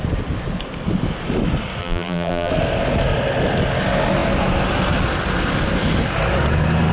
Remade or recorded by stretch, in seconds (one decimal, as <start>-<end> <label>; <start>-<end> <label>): 0.0-1.8 recorded; 1.8-2.5 remade; 2.5-6.9 recorded